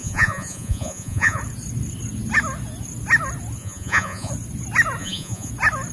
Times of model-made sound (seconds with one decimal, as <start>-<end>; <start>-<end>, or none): 0.0-1.4; 3.6-4.3; 5.0-5.5